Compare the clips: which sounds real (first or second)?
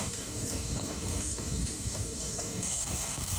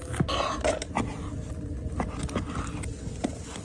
second